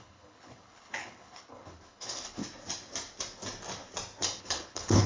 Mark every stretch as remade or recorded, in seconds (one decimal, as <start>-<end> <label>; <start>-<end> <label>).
0.0-2.4 remade; 2.4-4.4 recorded; 4.4-5.1 remade

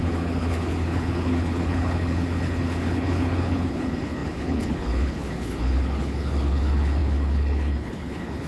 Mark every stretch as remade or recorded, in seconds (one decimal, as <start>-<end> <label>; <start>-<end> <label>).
0.0-8.5 remade

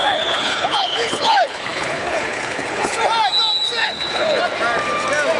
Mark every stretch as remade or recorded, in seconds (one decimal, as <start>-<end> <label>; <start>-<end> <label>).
0.0-3.0 remade; 3.0-3.8 recorded; 3.8-4.4 remade; 4.4-5.4 recorded

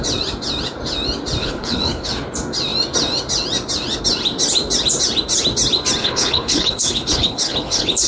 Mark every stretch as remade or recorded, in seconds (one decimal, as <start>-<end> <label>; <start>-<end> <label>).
0.0-1.4 recorded; 1.4-2.1 remade; 2.1-6.0 recorded; 6.0-8.1 remade